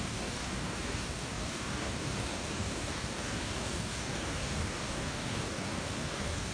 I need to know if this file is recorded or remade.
remade